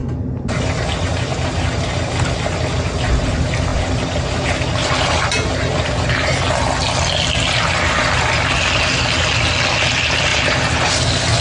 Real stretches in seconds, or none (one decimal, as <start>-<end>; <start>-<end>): 0.0-10.3; 10.9-11.4